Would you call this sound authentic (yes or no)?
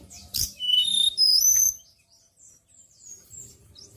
no